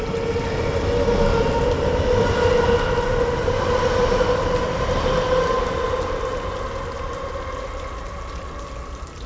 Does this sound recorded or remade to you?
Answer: recorded